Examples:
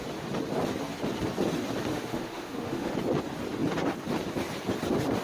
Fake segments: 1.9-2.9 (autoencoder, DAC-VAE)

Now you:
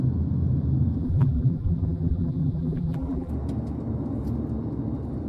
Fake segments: 1.0-3.3 (vocoder, BigVGAN v2)

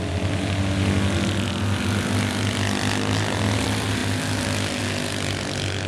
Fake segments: none

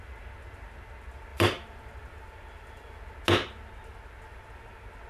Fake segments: 1.3-3.0 (vocoder, BigVGAN v2)

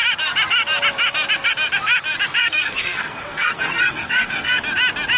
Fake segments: 2.4-4.6 (codec, SNAC)